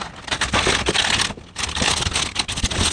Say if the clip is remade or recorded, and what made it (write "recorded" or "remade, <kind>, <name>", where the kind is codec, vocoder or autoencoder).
recorded